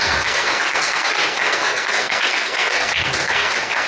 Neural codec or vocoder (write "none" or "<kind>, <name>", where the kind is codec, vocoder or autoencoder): codec, SNAC